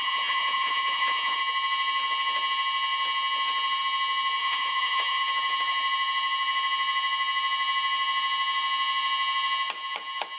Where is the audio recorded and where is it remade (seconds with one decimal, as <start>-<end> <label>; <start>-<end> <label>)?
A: 0.0-1.4 remade; 1.4-4.4 recorded; 4.4-5.2 remade; 5.2-10.4 recorded